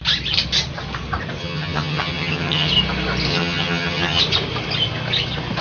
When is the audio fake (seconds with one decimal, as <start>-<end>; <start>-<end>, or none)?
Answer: 1.4-2.7; 3.3-4.2